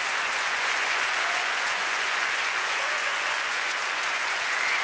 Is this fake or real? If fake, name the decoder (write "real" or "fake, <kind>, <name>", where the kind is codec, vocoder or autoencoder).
fake, vocoder, Vocos